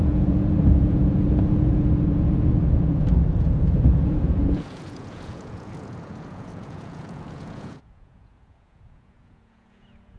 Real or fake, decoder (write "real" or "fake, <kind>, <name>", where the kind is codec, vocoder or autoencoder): fake, vocoder, Vocos